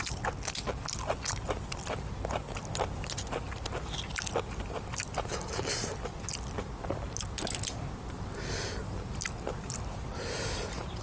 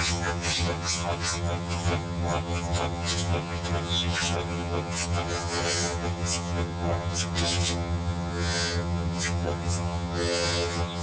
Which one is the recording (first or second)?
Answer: first